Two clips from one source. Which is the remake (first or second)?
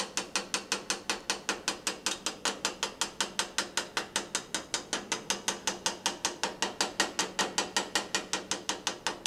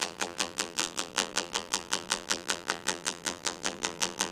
second